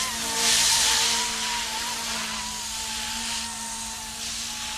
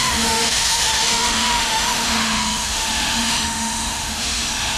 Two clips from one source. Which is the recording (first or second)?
first